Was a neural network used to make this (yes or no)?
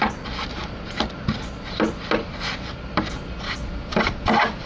no